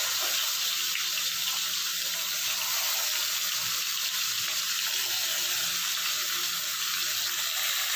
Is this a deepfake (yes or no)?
no